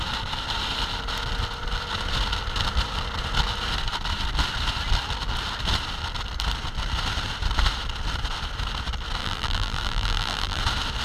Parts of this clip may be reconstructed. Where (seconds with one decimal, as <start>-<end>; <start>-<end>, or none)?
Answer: 9.2-10.6